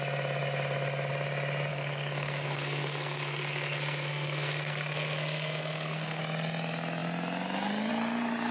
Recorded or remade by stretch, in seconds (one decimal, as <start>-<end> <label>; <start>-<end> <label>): 0.0-1.7 recorded; 1.7-6.2 remade; 6.2-8.5 recorded